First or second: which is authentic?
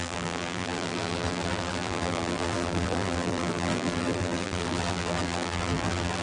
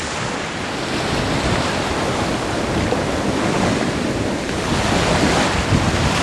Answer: second